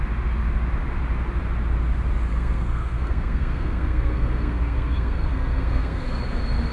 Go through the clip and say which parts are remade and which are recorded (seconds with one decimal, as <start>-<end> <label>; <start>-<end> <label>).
0.0-2.3 recorded; 2.3-6.2 remade; 6.2-6.7 recorded